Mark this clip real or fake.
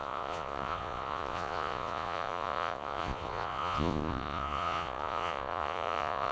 fake